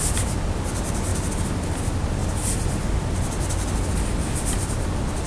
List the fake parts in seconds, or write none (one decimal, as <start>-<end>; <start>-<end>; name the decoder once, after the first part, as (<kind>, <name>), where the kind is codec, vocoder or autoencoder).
1.1-1.8 (vocoder, BigVGAN v2)